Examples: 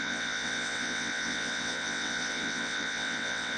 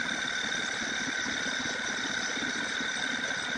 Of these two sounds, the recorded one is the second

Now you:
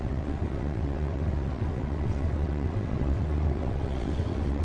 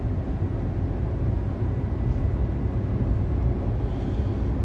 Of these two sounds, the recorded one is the second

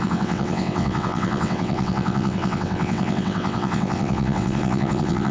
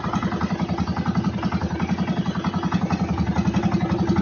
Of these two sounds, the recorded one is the second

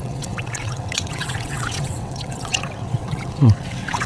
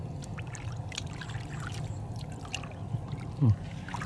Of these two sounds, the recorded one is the second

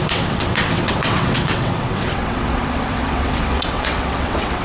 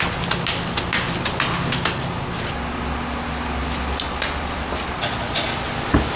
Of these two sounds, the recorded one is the second